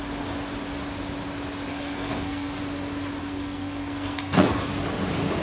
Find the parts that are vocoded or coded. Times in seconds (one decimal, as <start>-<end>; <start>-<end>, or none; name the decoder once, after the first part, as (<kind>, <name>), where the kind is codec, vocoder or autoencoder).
1.7-2.6 (codec, SNAC); 3.2-4.6